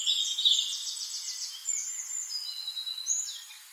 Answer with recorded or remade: recorded